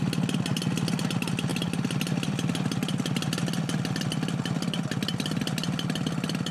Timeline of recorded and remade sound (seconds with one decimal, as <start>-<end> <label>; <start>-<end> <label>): 0.0-1.5 recorded; 1.5-5.4 remade; 5.4-6.5 recorded